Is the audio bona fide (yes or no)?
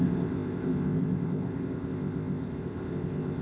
no